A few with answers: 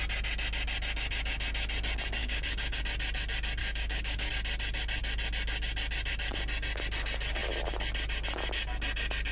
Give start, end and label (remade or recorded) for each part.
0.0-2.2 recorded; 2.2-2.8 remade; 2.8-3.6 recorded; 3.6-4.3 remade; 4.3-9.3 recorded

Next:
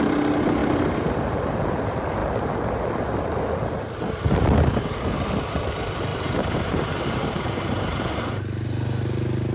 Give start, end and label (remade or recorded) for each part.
0.0-0.6 recorded; 0.6-1.2 remade; 1.2-6.1 recorded; 6.1-8.4 remade; 8.4-9.5 recorded

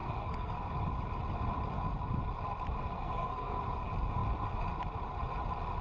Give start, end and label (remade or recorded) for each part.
0.0-0.6 remade; 0.6-2.8 recorded; 2.8-3.6 remade; 3.6-5.8 recorded

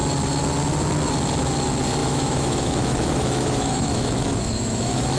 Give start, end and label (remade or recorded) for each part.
0.0-2.0 recorded; 2.0-5.2 remade

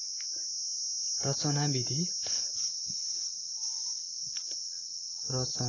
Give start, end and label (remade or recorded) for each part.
0.0-2.3 recorded; 2.3-5.3 remade; 5.3-5.7 recorded

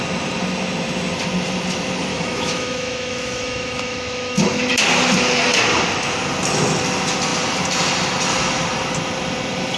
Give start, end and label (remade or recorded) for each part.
0.0-2.1 recorded; 2.1-4.7 remade; 4.7-9.8 recorded